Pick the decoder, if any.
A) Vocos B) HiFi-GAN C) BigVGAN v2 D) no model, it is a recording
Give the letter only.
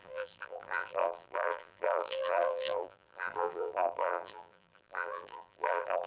C